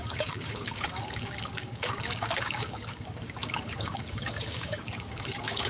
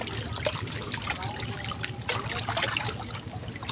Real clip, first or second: second